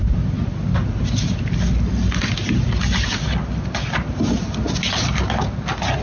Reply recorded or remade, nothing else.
recorded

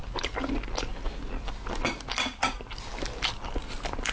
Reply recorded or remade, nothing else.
recorded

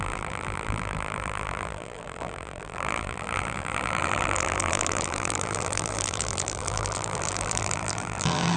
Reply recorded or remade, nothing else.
remade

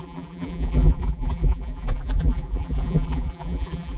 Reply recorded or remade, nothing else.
remade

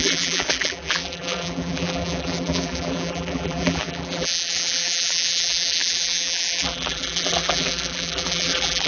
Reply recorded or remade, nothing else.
remade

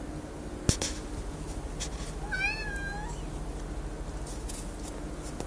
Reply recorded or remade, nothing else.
recorded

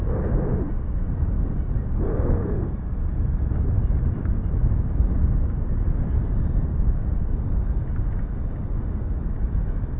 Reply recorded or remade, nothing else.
recorded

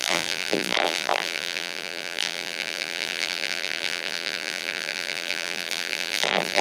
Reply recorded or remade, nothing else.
remade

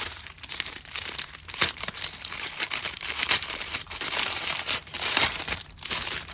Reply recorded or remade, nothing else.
remade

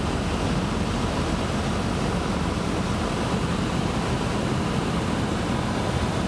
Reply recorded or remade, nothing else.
recorded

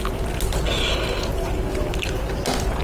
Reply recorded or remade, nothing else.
recorded